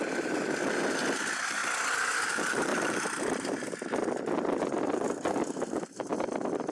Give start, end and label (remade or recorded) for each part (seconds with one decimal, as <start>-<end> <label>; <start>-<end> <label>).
0.0-6.1 recorded; 6.1-6.7 remade